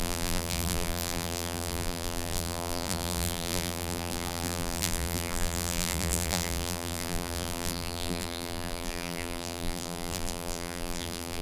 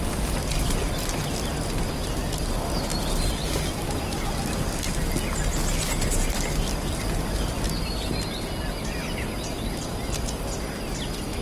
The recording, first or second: second